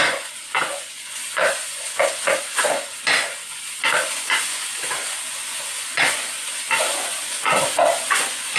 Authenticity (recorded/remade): remade